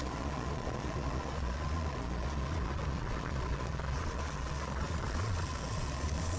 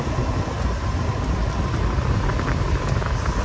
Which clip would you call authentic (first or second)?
second